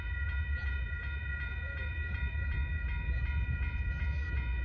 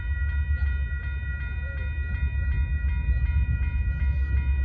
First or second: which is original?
second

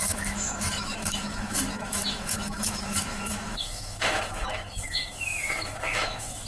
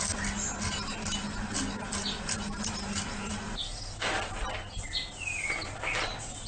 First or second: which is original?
second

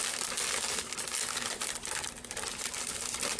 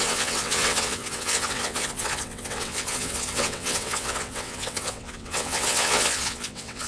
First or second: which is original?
first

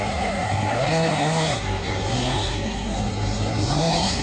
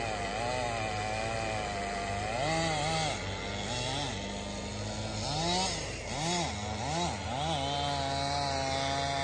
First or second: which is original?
second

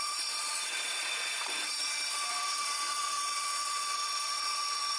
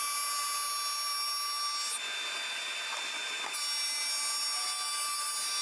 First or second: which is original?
second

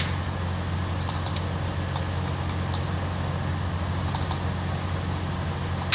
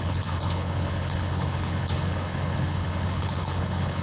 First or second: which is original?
first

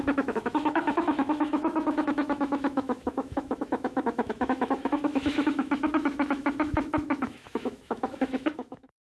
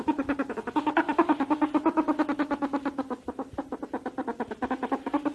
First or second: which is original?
second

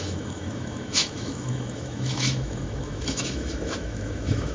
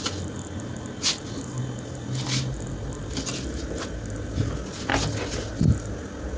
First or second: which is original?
second